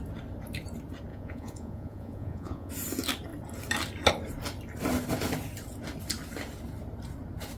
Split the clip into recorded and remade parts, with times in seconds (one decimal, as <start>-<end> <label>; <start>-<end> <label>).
0.0-1.1 recorded; 1.1-2.7 remade; 2.7-7.6 recorded